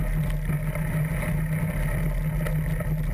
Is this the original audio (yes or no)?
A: yes